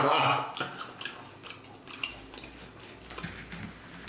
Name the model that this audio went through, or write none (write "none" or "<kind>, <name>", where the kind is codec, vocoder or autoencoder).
none